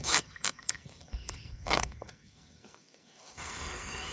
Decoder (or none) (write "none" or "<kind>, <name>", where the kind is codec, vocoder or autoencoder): codec, SNAC